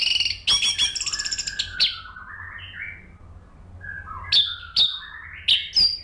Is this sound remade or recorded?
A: recorded